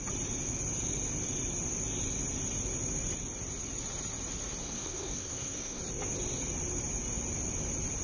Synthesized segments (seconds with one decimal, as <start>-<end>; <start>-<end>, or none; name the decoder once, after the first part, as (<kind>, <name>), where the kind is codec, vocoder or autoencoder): 4.6-5.8 (codec, SNAC)